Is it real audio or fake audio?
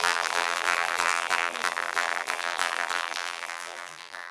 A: fake